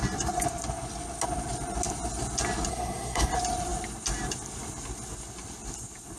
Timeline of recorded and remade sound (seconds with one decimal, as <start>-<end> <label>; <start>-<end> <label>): 0.0-2.7 recorded; 2.7-3.3 remade; 3.3-6.2 recorded